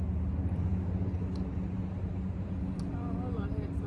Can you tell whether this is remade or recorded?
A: recorded